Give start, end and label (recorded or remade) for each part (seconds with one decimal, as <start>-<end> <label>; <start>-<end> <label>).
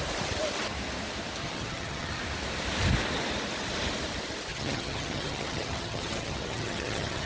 0.0-1.4 recorded; 1.4-2.2 remade; 2.2-4.5 recorded; 4.5-7.3 remade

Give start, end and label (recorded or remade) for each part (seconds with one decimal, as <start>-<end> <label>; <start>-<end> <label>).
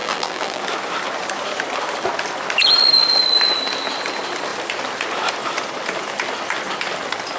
0.0-0.6 remade; 0.6-7.4 recorded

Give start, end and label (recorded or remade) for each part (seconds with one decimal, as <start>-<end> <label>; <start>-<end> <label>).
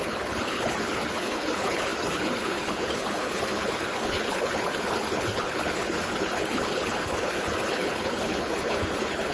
0.0-9.3 remade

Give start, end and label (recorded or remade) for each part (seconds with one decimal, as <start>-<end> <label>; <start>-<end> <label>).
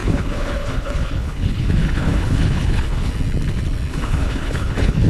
0.0-3.1 remade; 3.1-3.9 recorded; 3.9-5.1 remade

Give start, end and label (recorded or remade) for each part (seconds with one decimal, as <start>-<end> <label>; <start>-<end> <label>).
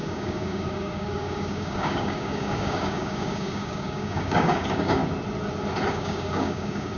0.0-5.0 remade; 5.0-5.9 recorded; 5.9-7.0 remade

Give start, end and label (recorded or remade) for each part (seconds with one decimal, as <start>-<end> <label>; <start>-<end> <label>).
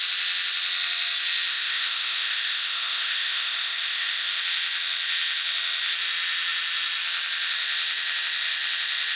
0.0-1.5 recorded; 1.5-4.4 remade; 4.4-9.2 recorded